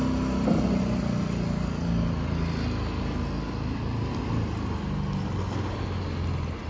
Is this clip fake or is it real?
real